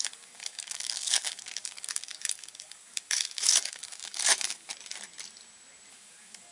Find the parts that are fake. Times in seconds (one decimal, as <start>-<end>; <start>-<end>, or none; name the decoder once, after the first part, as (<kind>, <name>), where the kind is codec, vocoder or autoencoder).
0.0-4.7 (codec, DAC); 5.9-6.5